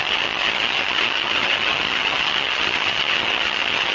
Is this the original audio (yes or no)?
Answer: no